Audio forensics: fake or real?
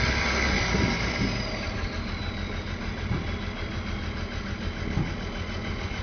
real